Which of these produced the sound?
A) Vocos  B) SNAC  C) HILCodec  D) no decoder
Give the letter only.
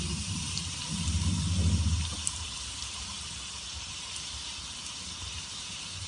D